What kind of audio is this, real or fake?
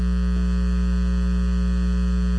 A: real